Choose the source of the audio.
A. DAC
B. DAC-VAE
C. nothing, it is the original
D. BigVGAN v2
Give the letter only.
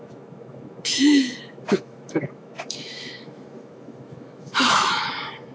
B